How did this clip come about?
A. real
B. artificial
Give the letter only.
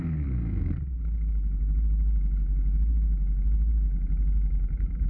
A